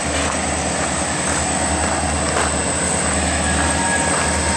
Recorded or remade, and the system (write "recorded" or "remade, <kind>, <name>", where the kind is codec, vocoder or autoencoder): recorded